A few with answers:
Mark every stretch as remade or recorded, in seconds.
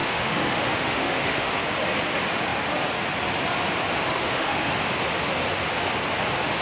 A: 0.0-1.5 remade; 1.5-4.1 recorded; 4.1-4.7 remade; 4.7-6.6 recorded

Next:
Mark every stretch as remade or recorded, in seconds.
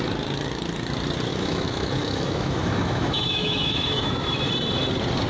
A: 0.0-1.3 recorded; 1.3-4.5 remade; 4.5-5.3 recorded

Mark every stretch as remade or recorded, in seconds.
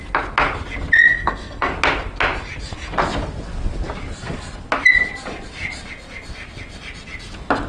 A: 0.0-1.1 recorded; 1.1-1.7 remade; 1.7-7.7 recorded